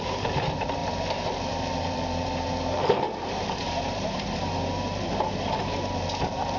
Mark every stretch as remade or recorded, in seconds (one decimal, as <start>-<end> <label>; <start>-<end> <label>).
0.0-0.8 recorded; 0.8-4.4 remade; 4.4-6.6 recorded